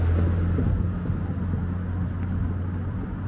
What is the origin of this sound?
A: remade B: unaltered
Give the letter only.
B